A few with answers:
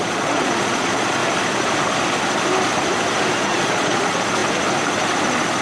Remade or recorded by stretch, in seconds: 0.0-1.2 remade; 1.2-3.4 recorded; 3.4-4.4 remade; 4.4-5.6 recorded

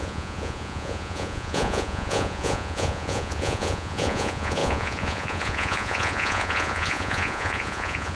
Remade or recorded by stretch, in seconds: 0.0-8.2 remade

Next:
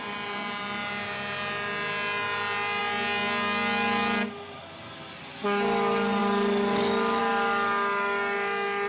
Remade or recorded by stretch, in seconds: 0.0-8.9 recorded